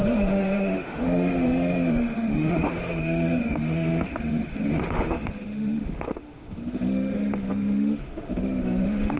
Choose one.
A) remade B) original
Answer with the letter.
A